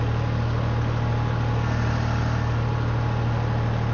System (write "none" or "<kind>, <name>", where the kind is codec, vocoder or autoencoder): none